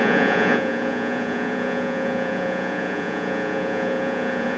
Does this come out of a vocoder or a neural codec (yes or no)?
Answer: yes